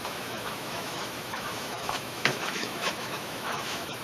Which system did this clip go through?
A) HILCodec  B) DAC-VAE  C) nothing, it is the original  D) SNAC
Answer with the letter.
B